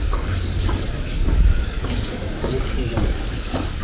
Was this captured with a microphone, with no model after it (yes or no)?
no